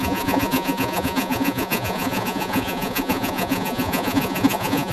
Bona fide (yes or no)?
no